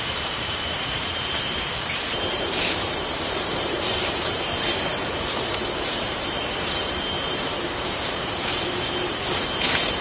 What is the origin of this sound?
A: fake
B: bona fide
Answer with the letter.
A